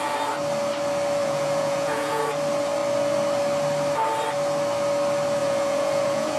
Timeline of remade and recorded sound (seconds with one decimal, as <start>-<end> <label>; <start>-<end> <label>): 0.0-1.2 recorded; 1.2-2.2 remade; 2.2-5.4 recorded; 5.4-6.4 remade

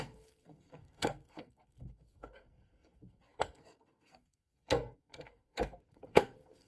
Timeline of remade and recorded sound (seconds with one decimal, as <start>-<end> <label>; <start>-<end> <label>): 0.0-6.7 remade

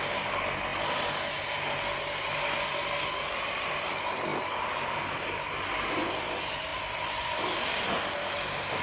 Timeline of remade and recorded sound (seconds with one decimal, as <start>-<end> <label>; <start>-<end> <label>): 0.0-6.7 recorded; 6.7-7.6 remade; 7.6-8.8 recorded

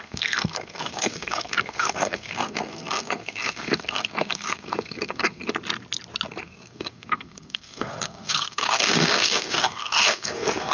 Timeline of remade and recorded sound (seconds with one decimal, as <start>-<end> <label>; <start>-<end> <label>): 0.0-5.4 remade; 5.4-6.4 recorded; 6.4-10.7 remade

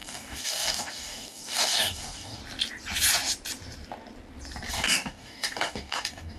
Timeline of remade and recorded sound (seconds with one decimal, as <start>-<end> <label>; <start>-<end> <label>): 0.0-2.4 remade; 2.4-4.7 recorded; 4.7-6.4 remade

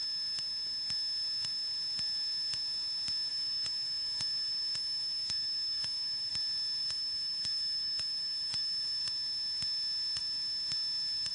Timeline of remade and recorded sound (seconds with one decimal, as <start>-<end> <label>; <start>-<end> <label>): 0.0-3.3 recorded; 3.3-6.3 remade; 6.3-6.8 recorded; 6.8-9.0 remade; 9.0-11.3 recorded

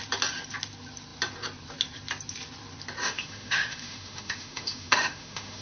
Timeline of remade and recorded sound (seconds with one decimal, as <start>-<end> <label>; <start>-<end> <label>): 0.0-3.0 recorded; 3.0-5.6 remade